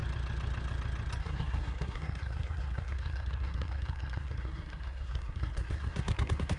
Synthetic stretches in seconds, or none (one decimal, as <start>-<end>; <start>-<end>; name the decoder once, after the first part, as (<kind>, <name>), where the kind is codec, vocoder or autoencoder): 1.2-6.6 (codec, SNAC)